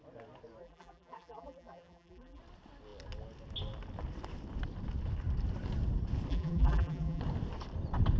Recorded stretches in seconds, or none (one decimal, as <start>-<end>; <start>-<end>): 0.0-0.6; 2.4-6.3; 7.2-8.2